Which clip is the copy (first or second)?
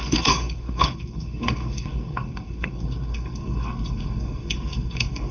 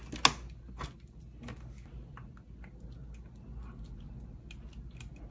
first